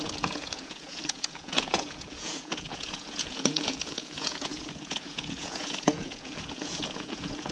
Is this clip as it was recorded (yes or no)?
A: no